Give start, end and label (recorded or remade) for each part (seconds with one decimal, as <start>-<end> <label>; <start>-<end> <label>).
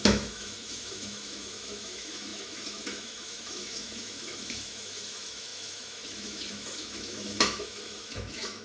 0.0-8.6 remade